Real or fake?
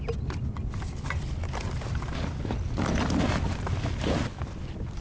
real